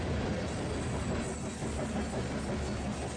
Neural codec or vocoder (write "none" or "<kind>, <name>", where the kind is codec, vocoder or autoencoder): none